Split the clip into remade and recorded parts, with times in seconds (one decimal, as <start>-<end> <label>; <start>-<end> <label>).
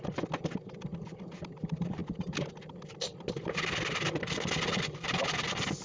0.0-5.8 recorded